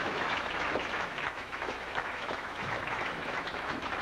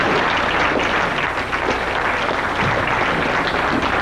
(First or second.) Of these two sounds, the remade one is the first